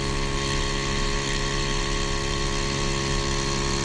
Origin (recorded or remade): recorded